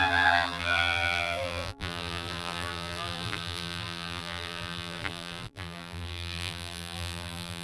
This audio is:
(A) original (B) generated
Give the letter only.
B